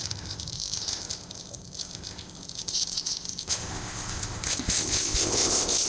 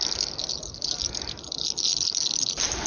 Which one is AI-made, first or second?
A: first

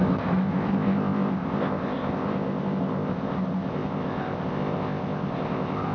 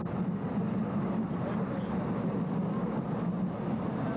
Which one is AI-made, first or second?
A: first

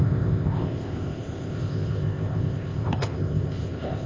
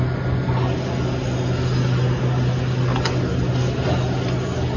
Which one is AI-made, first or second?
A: first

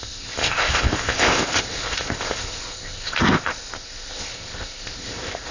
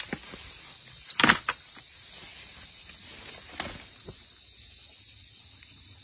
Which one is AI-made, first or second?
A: first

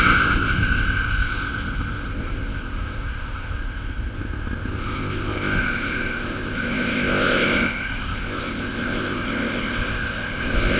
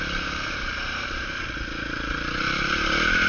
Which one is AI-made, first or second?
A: first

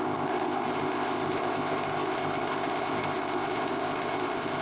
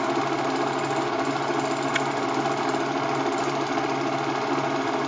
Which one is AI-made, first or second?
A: first